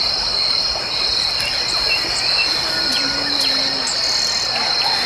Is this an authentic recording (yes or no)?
yes